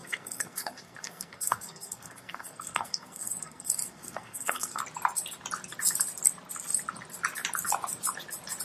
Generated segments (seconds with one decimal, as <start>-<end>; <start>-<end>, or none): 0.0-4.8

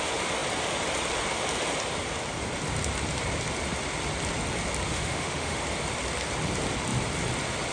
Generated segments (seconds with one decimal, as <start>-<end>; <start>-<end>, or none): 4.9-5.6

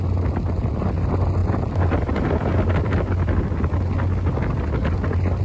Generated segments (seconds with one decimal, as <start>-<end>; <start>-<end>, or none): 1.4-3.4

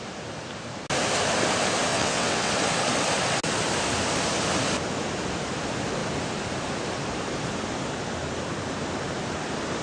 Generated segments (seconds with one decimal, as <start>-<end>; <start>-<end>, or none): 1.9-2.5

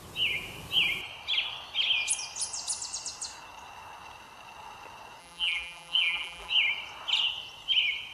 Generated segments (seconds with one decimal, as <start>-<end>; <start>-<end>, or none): 5.2-6.5